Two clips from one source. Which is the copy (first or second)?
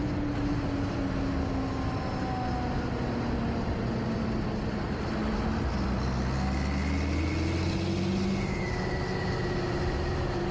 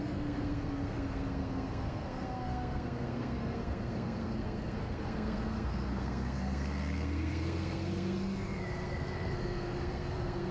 second